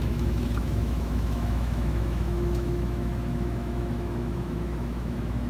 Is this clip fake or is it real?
fake